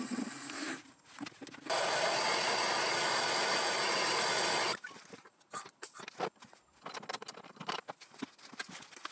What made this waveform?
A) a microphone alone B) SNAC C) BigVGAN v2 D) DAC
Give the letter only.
A